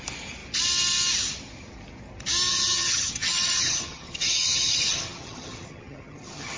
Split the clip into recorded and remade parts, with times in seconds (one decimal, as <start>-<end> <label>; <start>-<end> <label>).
0.0-2.5 recorded; 2.5-6.6 remade